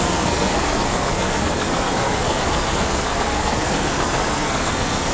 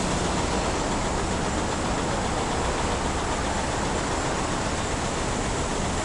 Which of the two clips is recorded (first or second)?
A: second